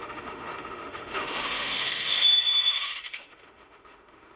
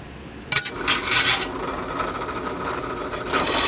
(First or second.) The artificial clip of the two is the first